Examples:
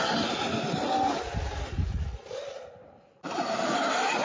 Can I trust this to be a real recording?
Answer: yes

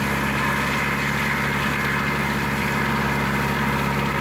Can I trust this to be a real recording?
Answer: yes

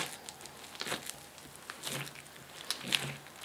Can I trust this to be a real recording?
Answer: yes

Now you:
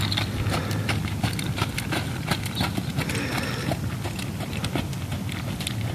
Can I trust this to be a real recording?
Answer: yes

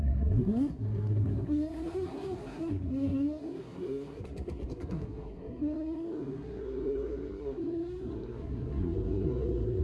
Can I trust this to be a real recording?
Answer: no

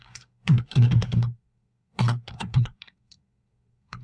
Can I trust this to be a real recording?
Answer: no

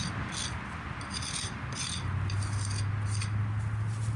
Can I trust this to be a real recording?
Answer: yes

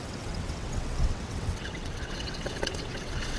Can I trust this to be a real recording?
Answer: no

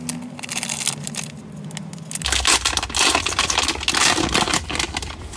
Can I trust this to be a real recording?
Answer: yes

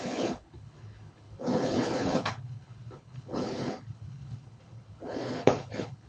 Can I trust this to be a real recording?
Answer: no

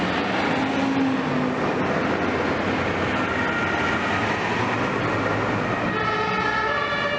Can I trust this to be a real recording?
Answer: yes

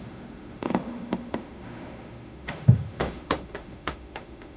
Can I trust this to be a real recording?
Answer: no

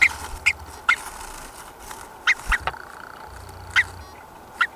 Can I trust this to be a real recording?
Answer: yes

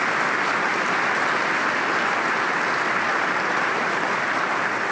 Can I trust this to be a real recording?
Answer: yes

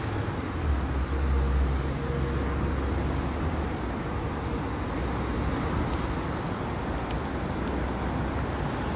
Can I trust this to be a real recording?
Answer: yes